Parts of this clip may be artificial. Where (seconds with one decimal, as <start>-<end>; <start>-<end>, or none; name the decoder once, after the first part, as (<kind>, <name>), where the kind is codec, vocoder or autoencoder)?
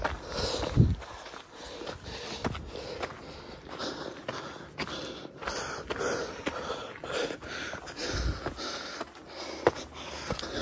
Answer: none